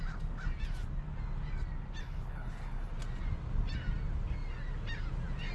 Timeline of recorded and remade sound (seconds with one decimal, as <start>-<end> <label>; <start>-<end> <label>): 0.0-2.0 recorded; 2.0-2.9 remade; 2.9-5.5 recorded